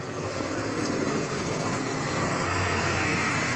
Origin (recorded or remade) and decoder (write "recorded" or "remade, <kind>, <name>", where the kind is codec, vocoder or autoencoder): remade, codec, SNAC